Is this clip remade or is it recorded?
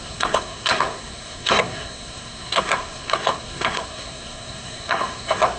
remade